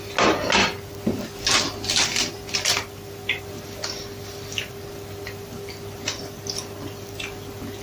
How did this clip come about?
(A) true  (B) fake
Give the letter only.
A